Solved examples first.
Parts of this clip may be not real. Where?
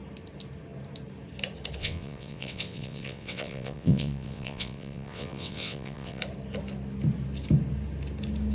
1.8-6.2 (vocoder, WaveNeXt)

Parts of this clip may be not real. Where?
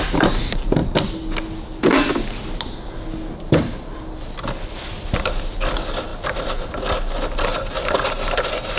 6.1-6.7 (vocoder, BigVGAN v2)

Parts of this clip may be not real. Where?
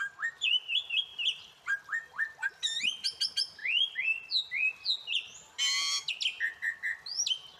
1.1-2.5 (vocoder, BigVGAN v2)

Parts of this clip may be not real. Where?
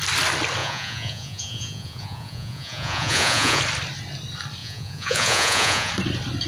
0.6-3.6 (vocoder, Vocos); 4.6-5.9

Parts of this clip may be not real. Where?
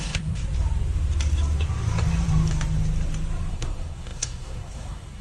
0.0-0.4 (codec, SNAC); 3.5-5.2